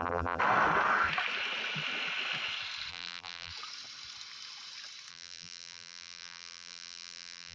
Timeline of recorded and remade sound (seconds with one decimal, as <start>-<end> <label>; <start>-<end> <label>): 0.0-0.4 remade; 0.4-2.9 recorded; 2.9-3.5 remade; 3.5-5.1 recorded; 5.1-7.5 remade